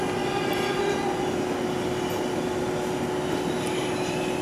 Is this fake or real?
real